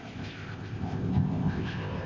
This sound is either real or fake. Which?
fake